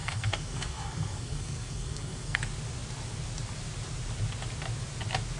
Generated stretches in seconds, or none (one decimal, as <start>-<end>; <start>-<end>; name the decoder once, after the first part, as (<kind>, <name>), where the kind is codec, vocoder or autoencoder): 0.0-2.4 (codec, SNAC)